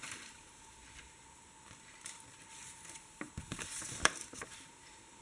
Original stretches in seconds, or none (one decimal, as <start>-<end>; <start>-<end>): 0.8-3.9